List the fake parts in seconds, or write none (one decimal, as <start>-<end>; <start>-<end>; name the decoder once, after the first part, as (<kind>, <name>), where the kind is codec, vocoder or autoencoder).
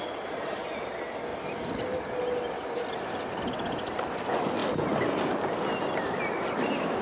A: none